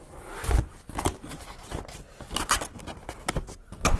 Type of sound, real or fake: real